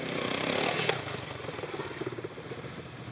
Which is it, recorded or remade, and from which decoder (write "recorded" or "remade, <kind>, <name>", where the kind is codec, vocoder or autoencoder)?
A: recorded